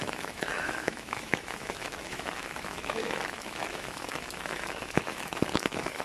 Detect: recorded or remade remade